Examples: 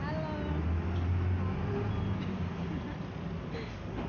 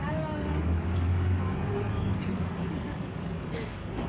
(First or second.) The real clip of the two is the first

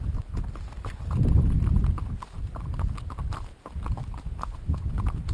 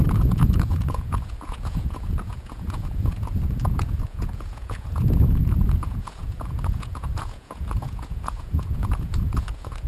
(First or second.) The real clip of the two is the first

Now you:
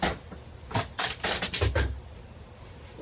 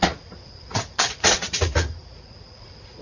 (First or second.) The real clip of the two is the first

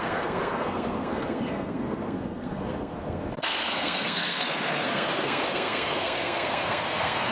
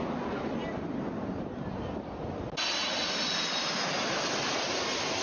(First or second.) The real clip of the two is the second